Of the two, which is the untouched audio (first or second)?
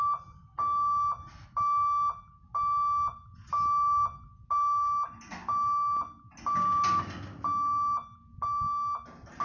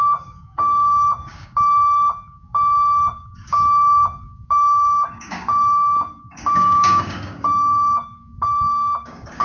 first